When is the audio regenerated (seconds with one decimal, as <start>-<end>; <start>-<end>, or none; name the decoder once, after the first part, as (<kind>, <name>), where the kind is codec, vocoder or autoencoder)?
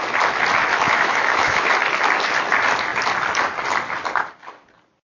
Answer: 0.7-1.7 (autoencoder, DAC-VAE)